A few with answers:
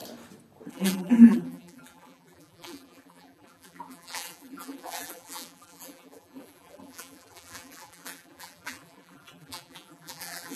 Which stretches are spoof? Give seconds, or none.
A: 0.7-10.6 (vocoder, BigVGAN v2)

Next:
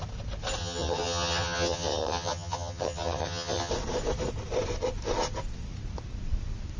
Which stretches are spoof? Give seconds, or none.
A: 0.6-3.7 (vocoder, HiFi-GAN)